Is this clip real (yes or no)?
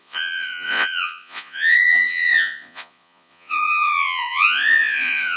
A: no